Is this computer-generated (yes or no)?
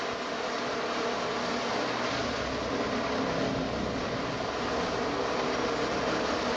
no